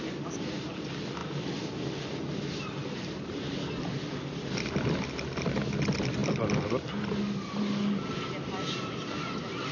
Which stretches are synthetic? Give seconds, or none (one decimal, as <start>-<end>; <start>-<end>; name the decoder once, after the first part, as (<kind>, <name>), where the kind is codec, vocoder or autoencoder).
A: none